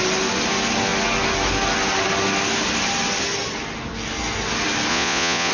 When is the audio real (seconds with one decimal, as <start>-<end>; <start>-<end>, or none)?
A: 0.0-4.9